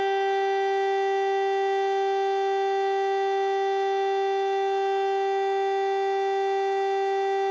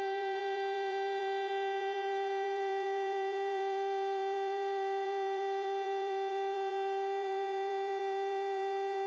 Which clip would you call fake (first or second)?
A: second